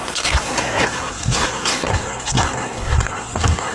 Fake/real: fake